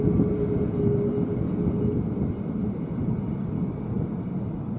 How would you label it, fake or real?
real